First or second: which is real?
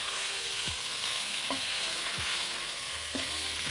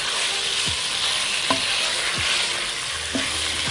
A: second